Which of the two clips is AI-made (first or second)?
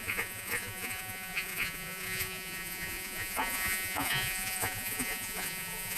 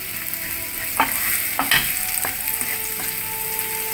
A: first